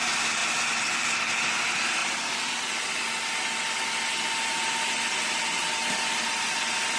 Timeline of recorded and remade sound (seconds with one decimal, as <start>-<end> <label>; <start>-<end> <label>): 0.0-7.0 recorded